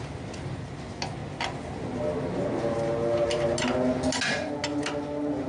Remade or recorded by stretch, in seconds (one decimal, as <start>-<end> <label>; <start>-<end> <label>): 0.0-5.5 recorded